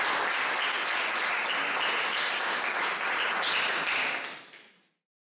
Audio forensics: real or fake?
real